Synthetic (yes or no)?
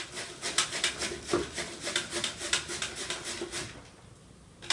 no